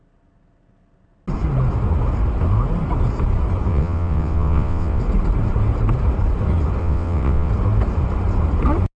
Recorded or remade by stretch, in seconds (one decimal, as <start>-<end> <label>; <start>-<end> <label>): 0.0-3.7 recorded; 3.7-5.0 remade; 5.0-6.8 recorded; 6.8-7.5 remade; 7.5-9.0 recorded